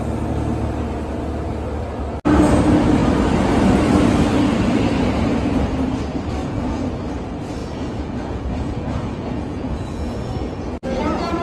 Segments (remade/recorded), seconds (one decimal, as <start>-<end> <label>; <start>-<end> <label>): 0.0-6.4 recorded; 6.4-6.9 remade; 6.9-7.6 recorded; 7.6-11.0 remade; 11.0-11.4 recorded